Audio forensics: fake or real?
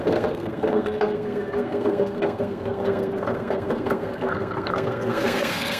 fake